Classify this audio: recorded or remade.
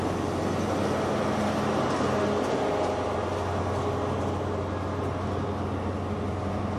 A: recorded